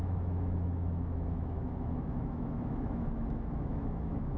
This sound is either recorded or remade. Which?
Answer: remade